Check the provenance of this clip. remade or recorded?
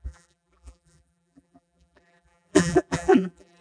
remade